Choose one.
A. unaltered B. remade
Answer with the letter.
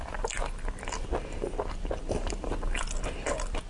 A